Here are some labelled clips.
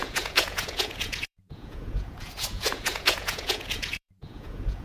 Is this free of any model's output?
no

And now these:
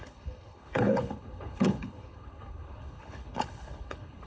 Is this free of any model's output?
no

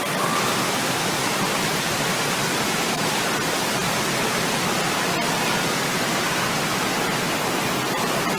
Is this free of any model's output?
yes